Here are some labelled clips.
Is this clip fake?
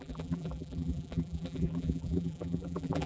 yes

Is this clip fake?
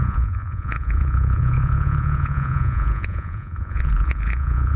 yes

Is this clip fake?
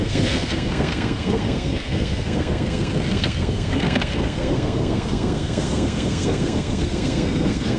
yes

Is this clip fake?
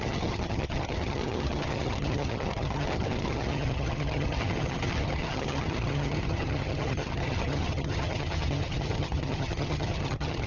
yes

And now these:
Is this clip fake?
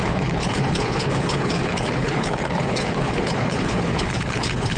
yes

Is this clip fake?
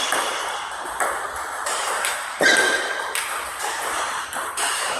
yes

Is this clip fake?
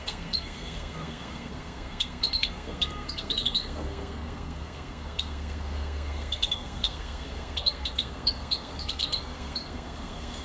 yes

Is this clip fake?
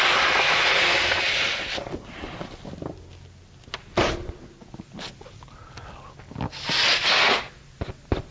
no